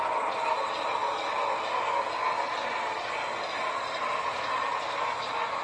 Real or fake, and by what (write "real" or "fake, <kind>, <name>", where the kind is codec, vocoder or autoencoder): real